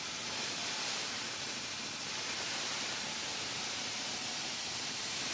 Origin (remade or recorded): remade